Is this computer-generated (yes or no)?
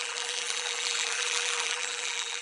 yes